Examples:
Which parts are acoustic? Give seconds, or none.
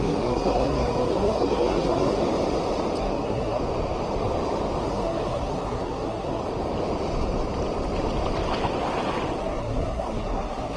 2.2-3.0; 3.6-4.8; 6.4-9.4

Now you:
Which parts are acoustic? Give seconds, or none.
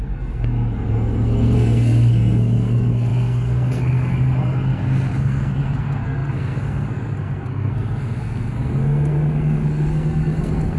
none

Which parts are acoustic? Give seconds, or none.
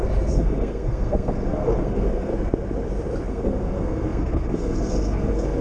2.3-3.3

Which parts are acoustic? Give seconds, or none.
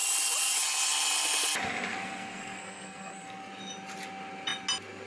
0.0-1.9; 3.5-5.1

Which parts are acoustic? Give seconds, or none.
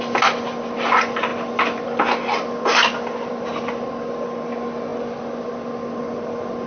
0.0-6.7